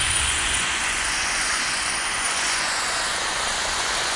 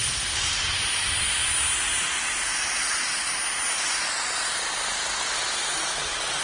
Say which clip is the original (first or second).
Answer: second